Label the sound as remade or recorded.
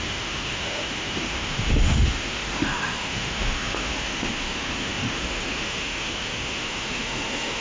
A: remade